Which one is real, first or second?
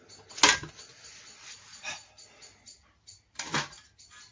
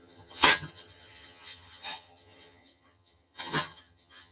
first